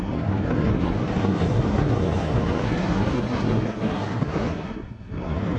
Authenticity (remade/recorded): remade